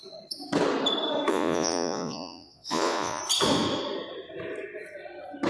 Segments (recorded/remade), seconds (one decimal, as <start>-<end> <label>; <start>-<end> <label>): 0.0-1.3 recorded; 1.3-3.2 remade; 3.2-5.5 recorded